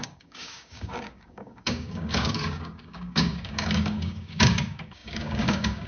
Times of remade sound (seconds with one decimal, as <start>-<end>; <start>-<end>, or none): 0.0-5.9